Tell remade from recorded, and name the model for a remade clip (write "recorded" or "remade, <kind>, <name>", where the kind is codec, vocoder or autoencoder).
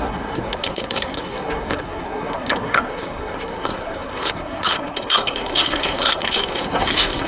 remade, codec, SNAC